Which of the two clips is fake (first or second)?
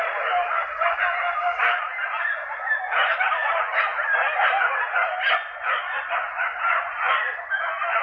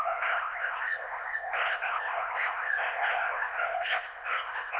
second